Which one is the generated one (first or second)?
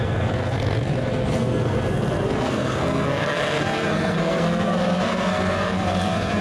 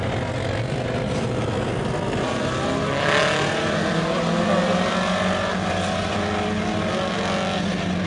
first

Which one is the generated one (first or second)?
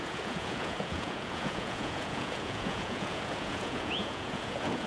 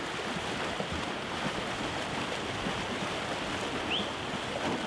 first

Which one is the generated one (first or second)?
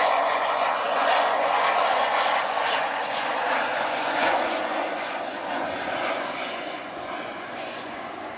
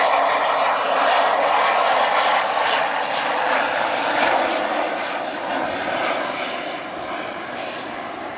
first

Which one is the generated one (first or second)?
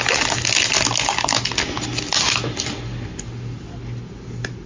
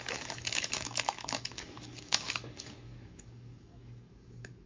second